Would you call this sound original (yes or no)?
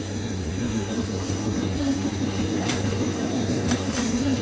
no